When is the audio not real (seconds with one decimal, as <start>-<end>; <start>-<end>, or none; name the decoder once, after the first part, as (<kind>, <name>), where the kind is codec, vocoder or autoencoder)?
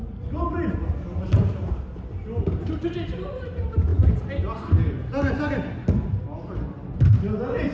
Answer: none